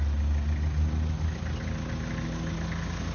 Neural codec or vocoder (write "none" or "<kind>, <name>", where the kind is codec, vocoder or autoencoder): none